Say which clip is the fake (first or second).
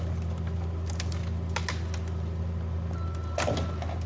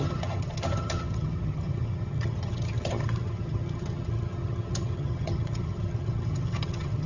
second